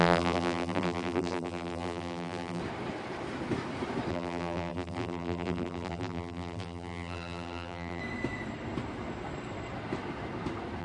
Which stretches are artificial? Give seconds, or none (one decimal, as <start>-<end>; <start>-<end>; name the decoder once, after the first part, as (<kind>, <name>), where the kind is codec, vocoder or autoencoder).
0.0-2.6 (vocoder, BigVGAN v2); 4.1-8.0

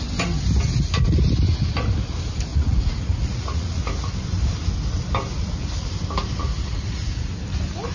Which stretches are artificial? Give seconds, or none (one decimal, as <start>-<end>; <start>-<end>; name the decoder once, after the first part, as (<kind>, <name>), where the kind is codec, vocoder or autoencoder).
2.5-3.9 (vocoder, Vocos); 5.3-5.9; 6.4-7.3

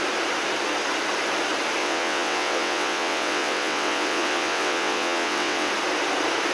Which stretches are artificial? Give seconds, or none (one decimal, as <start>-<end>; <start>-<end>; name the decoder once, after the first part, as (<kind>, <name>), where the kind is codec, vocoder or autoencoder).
1.8-5.7 (vocoder, WaveNeXt)

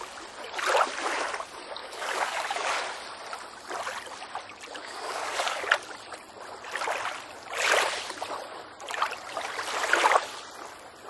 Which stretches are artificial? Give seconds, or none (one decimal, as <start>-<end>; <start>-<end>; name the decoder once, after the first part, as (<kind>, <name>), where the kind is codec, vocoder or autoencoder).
1.8-2.8 (codec, DAC); 4.8-5.6